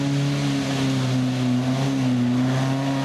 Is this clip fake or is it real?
real